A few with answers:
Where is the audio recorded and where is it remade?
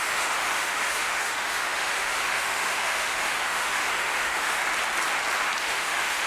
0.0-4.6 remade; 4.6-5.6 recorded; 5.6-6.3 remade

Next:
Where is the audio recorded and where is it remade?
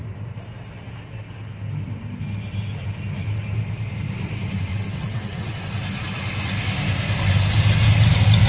0.0-4.7 recorded; 4.7-5.6 remade; 5.6-8.5 recorded